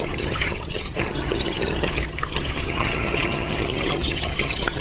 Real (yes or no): no